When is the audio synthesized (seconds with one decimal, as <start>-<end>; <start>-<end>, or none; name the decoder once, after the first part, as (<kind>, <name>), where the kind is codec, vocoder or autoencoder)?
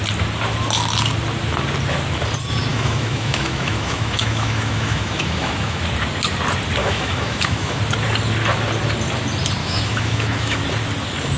2.7-5.8 (autoencoder, DAC-VAE); 6.8-7.8; 9.6-10.6